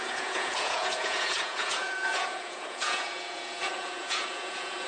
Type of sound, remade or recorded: remade